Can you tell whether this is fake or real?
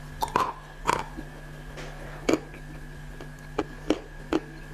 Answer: real